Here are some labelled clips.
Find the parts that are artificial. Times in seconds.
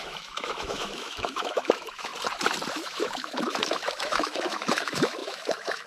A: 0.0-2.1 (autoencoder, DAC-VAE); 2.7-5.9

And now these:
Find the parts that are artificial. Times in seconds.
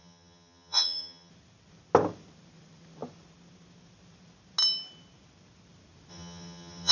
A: 0.0-1.3 (vocoder, HiFi-GAN); 6.1-6.9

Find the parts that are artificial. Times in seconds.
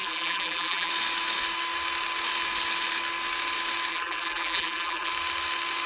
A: 0.0-0.9 (vocoder, BigVGAN v2); 3.9-5.1